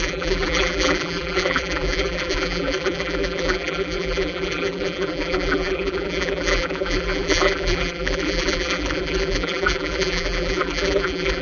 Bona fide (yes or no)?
no